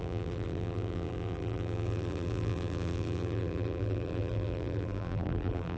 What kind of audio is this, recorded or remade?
remade